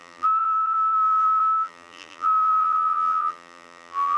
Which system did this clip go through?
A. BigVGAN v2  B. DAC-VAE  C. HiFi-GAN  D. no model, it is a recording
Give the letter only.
A